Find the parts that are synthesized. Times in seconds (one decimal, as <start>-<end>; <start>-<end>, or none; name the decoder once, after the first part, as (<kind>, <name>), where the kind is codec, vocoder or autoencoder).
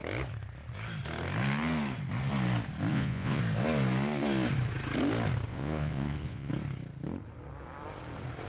2.9-3.4 (vocoder, Vocos); 5.5-6.5